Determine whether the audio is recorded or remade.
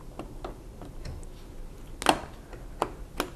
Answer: recorded